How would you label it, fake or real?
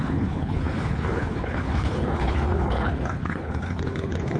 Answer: fake